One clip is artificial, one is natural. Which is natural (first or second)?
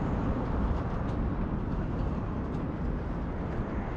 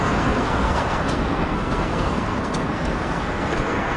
first